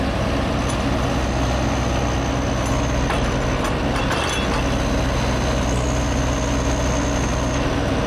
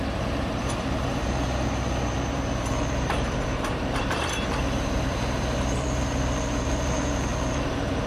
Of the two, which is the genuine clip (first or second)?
first